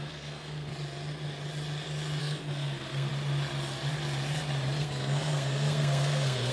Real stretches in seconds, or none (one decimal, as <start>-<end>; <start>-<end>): 0.7-2.2; 3.1-4.8